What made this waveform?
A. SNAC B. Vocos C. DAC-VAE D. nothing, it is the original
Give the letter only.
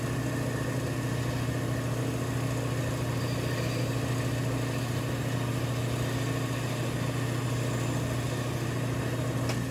D